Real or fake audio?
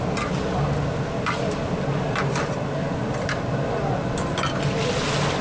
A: real